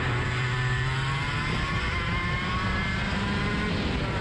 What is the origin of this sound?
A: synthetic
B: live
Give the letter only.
B